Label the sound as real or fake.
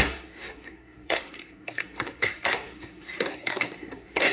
fake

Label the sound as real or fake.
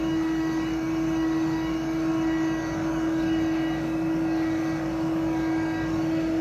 fake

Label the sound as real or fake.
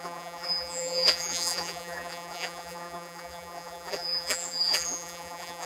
fake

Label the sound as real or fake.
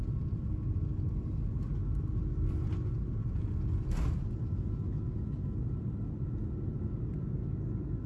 real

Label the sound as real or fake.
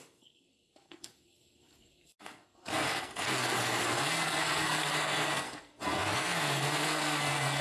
fake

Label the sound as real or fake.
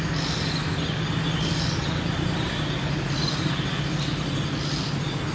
real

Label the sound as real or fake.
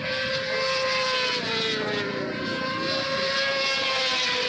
real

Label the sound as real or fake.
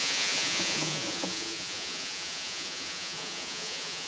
fake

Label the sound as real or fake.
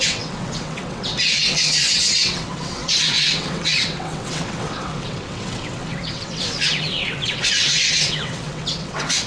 fake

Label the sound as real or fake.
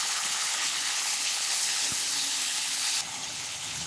fake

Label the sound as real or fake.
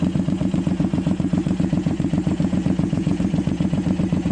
fake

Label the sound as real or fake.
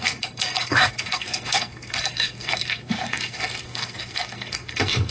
fake